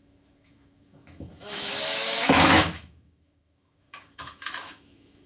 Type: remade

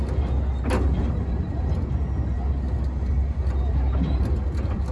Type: recorded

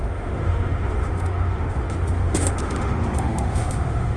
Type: remade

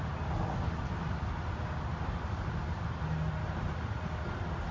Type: recorded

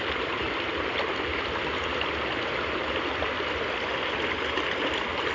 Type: recorded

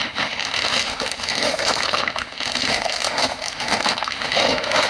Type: remade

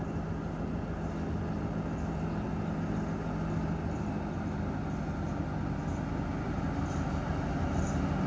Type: recorded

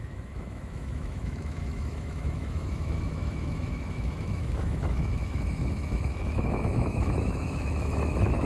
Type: remade